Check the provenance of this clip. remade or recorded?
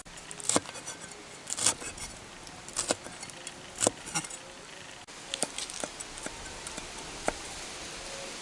recorded